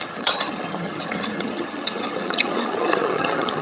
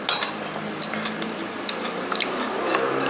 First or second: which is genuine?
second